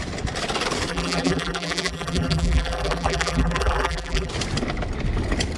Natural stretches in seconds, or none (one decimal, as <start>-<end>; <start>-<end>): 0.0-0.9; 4.3-5.6